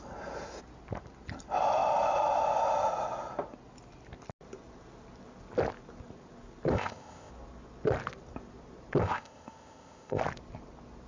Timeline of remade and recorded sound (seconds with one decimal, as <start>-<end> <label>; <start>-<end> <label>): 0.0-6.7 recorded; 6.7-7.3 remade; 7.3-9.0 recorded; 9.0-10.2 remade; 10.2-11.1 recorded